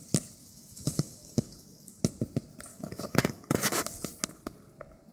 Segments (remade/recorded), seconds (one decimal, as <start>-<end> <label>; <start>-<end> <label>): 0.0-0.4 recorded; 0.4-2.0 remade; 2.0-2.7 recorded; 2.7-3.8 remade; 3.8-5.1 recorded